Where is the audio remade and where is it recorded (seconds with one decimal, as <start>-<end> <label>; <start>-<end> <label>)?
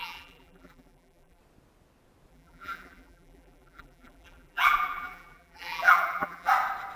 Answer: 0.0-1.4 remade; 1.4-2.3 recorded; 2.3-6.5 remade; 6.5-7.0 recorded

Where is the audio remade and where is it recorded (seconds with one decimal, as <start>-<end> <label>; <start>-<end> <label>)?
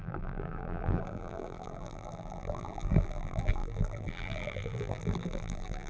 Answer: 0.0-5.9 remade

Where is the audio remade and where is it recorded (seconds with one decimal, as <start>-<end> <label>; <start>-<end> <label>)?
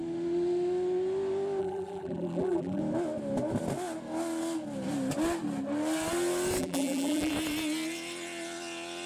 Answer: 0.0-1.6 recorded; 1.6-2.8 remade; 2.8-6.6 recorded; 6.6-7.3 remade; 7.3-9.1 recorded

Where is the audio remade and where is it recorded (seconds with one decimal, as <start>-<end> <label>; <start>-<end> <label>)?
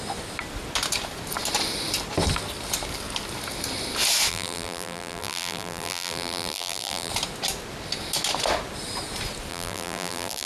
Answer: 0.0-4.3 recorded; 4.3-7.1 remade; 7.1-9.5 recorded; 9.5-10.5 remade